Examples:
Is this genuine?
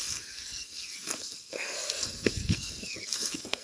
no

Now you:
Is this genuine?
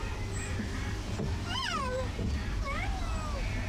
yes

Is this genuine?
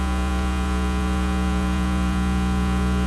no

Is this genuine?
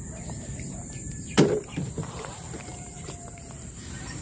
no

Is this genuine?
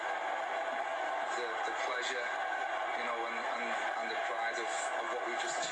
yes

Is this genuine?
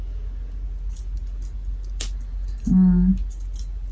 yes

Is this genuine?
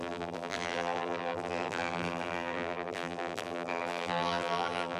no